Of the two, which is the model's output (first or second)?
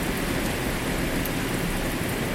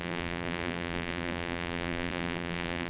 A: second